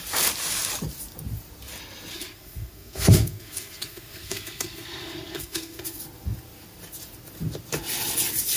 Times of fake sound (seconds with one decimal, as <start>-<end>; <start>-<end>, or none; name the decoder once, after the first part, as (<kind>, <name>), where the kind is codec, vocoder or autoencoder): 2.1-6.0 (codec, SNAC)